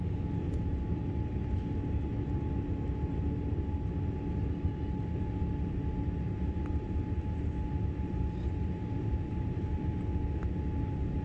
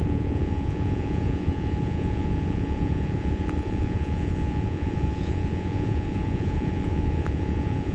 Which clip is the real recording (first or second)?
first